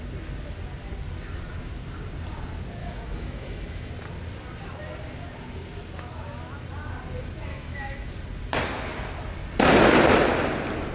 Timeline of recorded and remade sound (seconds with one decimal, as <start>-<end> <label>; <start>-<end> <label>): 0.0-2.8 recorded; 2.8-3.9 remade; 3.9-7.5 recorded; 7.5-8.1 remade; 8.1-10.9 recorded